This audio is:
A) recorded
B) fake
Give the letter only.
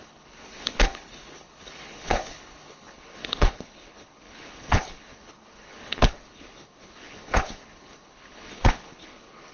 B